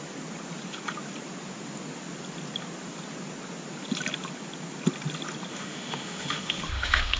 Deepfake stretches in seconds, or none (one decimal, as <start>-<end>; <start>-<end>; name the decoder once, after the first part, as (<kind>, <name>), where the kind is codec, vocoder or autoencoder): 5.5-7.2 (autoencoder, DAC-VAE)